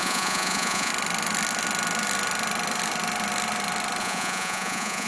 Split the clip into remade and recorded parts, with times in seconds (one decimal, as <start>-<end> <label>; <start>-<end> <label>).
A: 0.0-0.9 remade; 0.9-4.0 recorded; 4.0-5.1 remade